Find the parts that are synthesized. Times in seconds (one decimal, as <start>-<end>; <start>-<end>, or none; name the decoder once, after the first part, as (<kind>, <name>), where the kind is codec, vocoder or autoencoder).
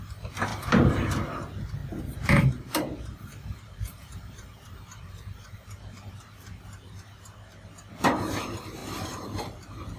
0.5-1.1 (vocoder, BigVGAN v2); 1.8-6.1